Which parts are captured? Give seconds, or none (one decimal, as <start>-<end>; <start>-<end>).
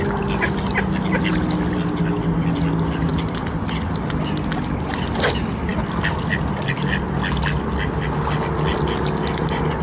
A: 0.0-3.1; 3.7-5.7; 6.3-9.8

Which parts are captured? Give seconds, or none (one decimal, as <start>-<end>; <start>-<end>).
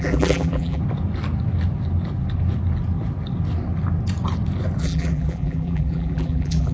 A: 0.8-4.8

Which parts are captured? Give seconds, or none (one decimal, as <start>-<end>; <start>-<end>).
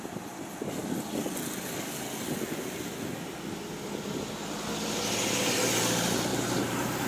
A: 0.0-6.3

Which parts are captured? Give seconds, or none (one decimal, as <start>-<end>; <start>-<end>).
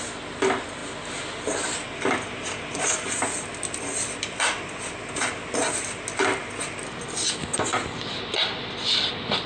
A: 0.0-9.5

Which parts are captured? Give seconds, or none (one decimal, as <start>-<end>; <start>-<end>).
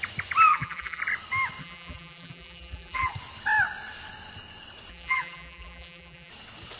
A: 0.0-0.5; 1.0-1.6; 3.1-4.9; 6.3-6.8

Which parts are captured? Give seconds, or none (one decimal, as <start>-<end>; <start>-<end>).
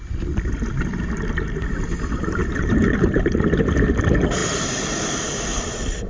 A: 0.0-2.4; 3.2-6.1